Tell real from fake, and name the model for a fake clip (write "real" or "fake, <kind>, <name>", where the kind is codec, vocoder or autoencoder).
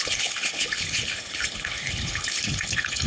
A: fake, codec, HILCodec